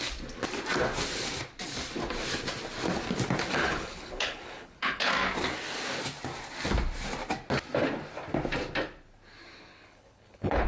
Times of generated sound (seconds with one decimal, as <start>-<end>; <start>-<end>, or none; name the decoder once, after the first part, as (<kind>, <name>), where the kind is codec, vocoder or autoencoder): 3.6-5.1 (codec, HILCodec); 9.7-10.7

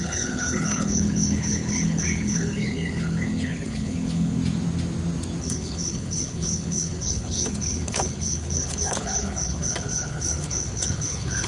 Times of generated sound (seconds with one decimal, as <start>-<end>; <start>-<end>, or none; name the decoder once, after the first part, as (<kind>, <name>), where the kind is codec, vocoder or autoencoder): 0.0-4.4 (codec, HILCodec); 5.4-11.5

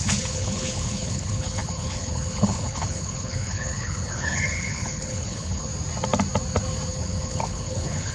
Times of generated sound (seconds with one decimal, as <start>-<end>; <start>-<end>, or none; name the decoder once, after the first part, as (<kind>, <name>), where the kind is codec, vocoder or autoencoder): 0.0-5.7 (codec, HILCodec); 6.9-8.1